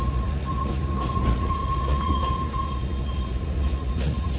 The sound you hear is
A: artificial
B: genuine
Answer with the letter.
A